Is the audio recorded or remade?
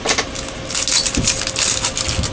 recorded